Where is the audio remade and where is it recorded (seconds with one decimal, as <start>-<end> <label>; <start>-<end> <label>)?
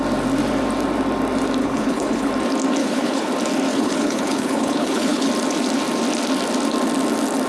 0.0-1.6 recorded; 1.6-2.3 remade; 2.3-2.8 recorded; 2.8-3.3 remade; 3.3-3.7 recorded; 3.7-5.3 remade; 5.3-7.5 recorded